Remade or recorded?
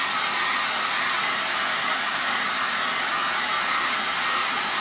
recorded